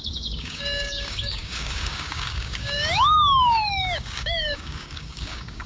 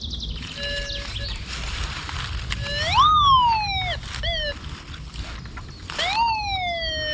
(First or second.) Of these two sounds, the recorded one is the second